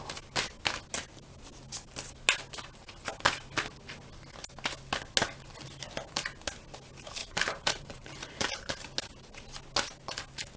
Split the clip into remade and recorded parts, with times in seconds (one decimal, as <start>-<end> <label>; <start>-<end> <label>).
0.0-7.2 recorded; 7.2-8.7 remade; 8.7-10.6 recorded